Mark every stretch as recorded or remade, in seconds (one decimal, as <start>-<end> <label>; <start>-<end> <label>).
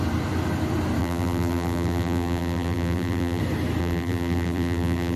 0.0-1.0 recorded; 1.0-3.4 remade; 3.4-3.8 recorded; 3.8-5.2 remade